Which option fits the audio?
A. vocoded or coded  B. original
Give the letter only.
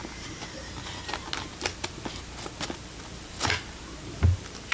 B